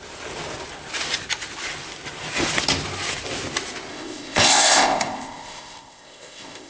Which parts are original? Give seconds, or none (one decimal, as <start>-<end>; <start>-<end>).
0.0-3.9